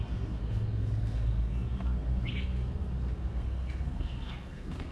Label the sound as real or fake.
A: fake